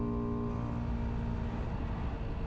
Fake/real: real